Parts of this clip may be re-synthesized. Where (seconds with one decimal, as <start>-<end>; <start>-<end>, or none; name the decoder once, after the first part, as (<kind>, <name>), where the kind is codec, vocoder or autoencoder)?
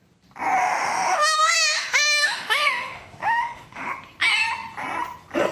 0.6-3.9 (autoencoder, DAC-VAE)